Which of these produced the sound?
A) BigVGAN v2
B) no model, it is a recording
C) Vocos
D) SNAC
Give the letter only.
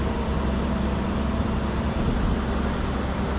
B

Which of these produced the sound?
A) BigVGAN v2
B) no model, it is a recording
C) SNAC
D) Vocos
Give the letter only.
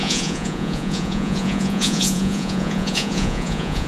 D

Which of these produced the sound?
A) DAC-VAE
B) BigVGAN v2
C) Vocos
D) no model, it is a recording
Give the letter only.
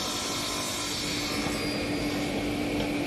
D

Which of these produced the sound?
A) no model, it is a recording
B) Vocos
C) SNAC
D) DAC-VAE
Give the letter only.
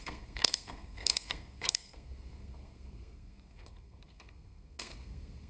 C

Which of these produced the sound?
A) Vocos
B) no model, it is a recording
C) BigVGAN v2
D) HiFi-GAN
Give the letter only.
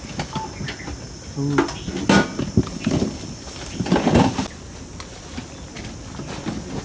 B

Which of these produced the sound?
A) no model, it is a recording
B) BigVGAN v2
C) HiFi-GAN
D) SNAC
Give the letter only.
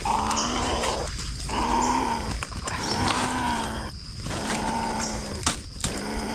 B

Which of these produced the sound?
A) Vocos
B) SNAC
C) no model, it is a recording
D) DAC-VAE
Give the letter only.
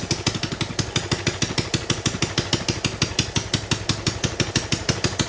C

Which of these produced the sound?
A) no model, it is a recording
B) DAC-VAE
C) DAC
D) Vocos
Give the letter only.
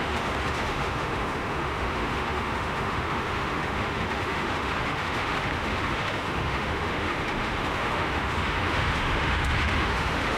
B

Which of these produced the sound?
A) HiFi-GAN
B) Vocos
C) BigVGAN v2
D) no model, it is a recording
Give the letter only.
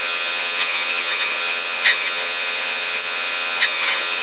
A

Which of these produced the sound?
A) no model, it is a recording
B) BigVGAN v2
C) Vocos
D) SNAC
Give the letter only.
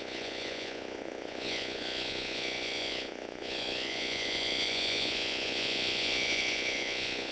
C